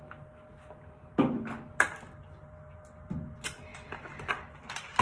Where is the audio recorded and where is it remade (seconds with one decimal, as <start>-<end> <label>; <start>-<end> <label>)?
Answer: 0.0-5.0 recorded